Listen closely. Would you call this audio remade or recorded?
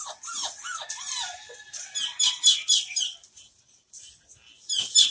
recorded